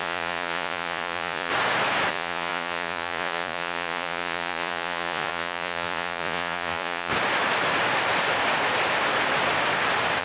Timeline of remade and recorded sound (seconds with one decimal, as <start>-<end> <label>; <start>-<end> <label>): 0.0-1.5 remade; 1.5-2.1 recorded; 2.1-7.1 remade; 7.1-10.2 recorded